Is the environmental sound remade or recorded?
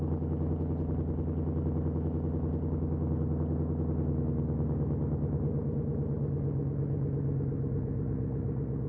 recorded